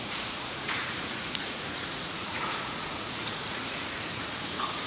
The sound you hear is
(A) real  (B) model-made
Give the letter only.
B